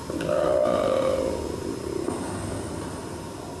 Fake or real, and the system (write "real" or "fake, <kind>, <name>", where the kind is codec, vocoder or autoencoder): real